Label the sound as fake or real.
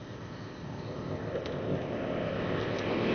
fake